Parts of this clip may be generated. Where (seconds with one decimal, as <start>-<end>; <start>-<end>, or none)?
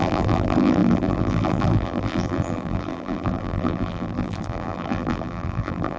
0.0-6.0